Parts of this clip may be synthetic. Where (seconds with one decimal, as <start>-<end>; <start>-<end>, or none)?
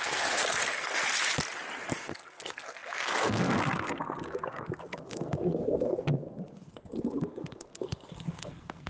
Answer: 0.0-1.0; 1.9-8.9